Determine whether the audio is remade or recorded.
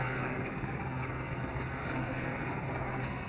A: remade